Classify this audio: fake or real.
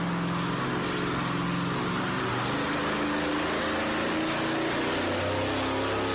real